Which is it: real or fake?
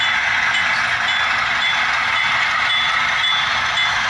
real